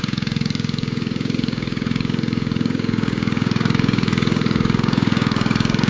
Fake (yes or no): yes